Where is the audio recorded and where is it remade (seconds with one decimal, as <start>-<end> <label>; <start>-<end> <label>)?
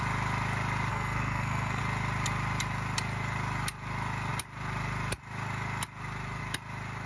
0.0-0.9 recorded; 0.9-1.8 remade; 1.8-7.1 recorded